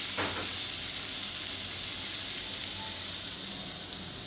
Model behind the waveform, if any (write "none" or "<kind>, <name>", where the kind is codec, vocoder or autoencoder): none